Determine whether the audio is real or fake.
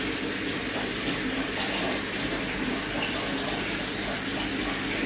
real